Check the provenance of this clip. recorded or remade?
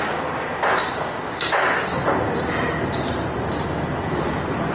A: recorded